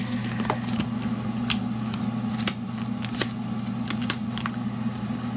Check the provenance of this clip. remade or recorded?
recorded